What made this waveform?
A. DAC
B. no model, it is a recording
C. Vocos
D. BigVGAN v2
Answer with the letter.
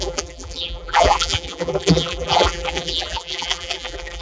D